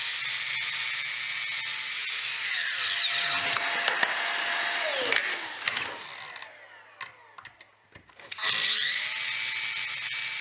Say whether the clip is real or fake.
real